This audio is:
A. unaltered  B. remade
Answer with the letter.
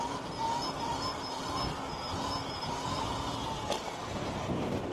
A